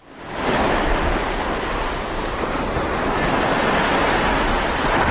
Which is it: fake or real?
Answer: real